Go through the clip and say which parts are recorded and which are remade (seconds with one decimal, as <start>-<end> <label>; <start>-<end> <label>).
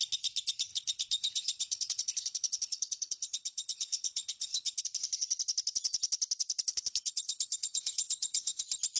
0.0-0.7 recorded; 0.7-4.8 remade; 4.8-6.7 recorded; 6.7-8.6 remade; 8.6-9.0 recorded